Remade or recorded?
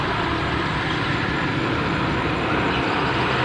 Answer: recorded